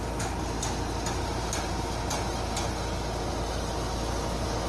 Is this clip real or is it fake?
real